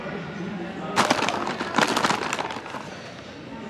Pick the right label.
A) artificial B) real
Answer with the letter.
B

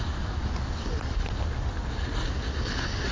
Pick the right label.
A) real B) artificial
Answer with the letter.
A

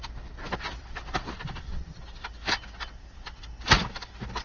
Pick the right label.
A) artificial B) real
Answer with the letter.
B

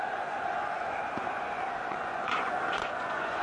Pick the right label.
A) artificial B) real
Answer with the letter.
A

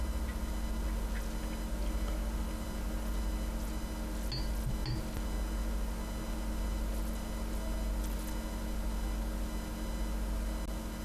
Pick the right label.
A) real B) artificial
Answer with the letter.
A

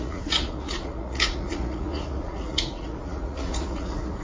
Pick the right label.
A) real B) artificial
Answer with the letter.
B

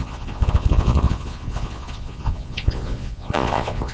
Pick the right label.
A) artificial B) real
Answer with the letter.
A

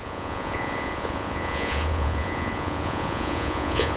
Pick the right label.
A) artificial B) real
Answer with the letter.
A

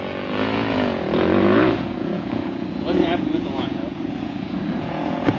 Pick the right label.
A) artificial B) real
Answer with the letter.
A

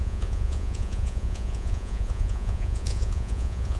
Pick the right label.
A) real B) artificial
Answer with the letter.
B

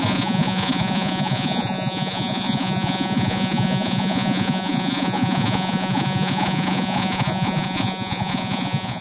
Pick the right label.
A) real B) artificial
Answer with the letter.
B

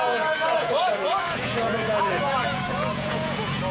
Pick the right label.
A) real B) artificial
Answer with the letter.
B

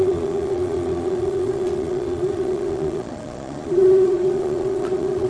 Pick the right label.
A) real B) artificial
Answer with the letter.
B